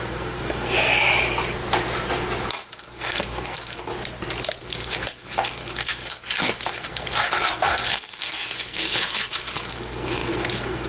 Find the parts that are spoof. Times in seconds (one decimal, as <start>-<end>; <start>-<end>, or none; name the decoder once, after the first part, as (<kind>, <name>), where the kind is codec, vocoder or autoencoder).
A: 0.0-1.1 (codec, SNAC); 2.7-3.9; 4.6-10.9